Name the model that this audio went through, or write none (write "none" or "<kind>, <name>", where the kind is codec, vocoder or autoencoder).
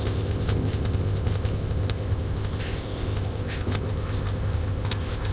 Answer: codec, ZipCodec